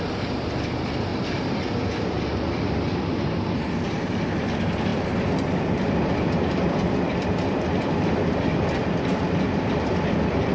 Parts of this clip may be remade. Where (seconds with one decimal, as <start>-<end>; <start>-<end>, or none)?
0.0-1.1; 2.0-4.9; 5.7-10.5